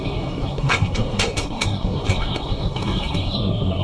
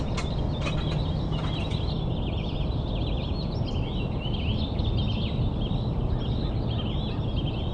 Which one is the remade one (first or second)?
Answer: first